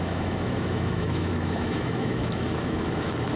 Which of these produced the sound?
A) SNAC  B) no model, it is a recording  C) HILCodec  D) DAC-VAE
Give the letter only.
D